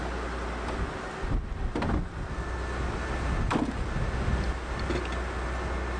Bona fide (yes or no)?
yes